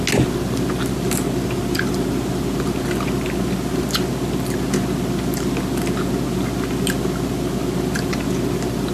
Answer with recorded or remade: recorded